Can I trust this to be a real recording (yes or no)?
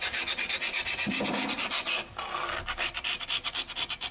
yes